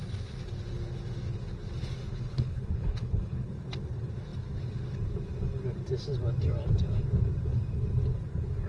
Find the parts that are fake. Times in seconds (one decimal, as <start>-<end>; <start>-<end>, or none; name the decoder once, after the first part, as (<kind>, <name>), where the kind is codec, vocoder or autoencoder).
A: 2.1-3.5 (codec, HILCodec)